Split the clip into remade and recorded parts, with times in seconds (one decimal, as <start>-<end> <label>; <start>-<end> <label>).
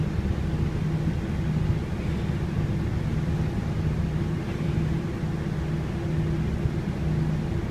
0.0-3.1 recorded; 3.1-5.2 remade; 5.2-7.7 recorded